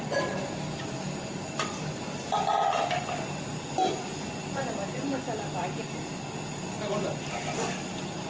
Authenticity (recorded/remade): recorded